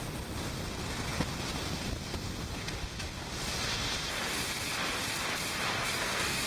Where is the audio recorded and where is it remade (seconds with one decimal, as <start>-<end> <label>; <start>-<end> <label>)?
0.0-5.8 recorded; 5.8-6.5 remade